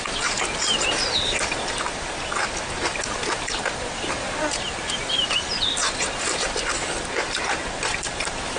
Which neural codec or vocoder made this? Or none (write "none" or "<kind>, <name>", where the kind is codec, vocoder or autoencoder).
none